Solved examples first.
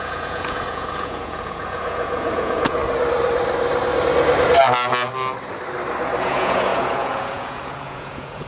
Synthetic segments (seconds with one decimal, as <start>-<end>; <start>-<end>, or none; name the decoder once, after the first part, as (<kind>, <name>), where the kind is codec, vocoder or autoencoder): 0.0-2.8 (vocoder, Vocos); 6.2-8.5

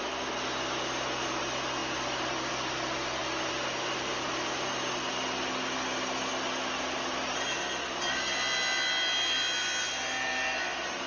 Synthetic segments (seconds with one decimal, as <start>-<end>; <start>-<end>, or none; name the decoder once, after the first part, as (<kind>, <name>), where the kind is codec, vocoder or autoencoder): none

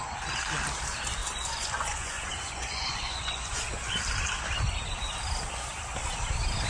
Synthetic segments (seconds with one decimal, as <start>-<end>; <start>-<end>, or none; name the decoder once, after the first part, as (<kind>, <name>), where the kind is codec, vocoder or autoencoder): 1.2-3.9 (vocoder, Vocos)

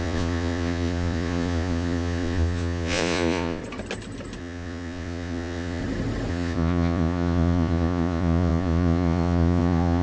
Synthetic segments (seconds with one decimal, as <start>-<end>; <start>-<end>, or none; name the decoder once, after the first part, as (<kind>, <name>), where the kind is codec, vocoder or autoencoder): 0.0-3.6 (vocoder, Vocos); 4.4-5.8; 6.3-10.0

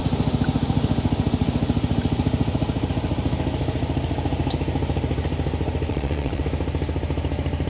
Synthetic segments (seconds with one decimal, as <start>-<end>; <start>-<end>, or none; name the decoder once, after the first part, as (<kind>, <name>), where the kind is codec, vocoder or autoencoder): 5.9-6.4 (vocoder, Vocos)

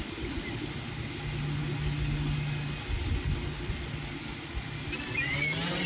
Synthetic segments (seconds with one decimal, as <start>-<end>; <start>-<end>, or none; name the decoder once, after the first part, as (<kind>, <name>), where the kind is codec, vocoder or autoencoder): none

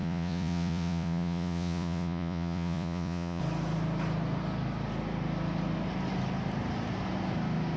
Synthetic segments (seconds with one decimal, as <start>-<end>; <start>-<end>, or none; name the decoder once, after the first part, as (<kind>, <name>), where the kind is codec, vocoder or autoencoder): 0.0-3.4 (vocoder, Vocos)

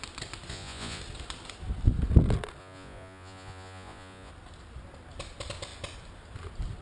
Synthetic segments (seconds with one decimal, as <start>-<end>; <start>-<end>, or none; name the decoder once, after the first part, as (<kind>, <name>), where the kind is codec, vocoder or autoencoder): 0.5-1.0 (vocoder, Vocos); 2.6-4.3